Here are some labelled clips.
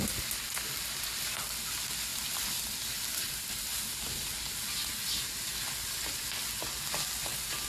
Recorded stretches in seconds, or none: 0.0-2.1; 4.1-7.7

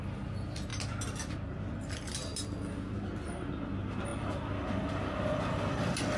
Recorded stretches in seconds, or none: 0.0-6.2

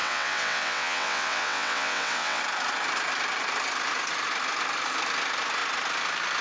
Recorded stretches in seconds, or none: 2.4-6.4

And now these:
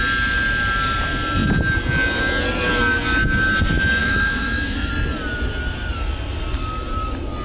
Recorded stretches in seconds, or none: 0.0-4.0; 4.9-7.4

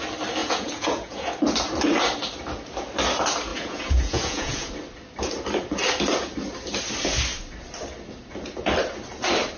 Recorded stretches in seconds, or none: 0.0-0.4; 1.3-3.5; 4.7-9.6